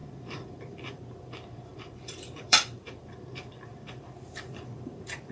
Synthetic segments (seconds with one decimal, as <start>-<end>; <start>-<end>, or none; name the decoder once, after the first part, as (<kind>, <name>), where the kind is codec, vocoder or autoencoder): 0.0-5.3 (vocoder, BigVGAN v2)